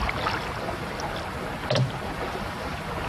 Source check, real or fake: real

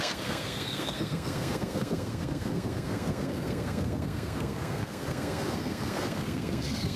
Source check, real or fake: fake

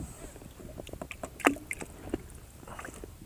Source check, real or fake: real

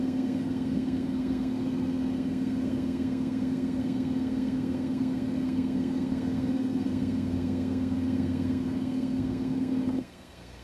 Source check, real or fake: fake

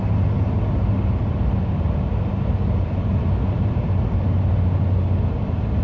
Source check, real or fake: real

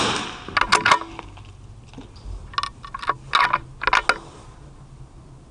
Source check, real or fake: real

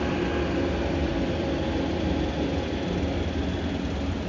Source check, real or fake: real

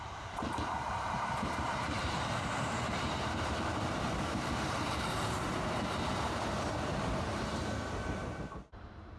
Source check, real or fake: fake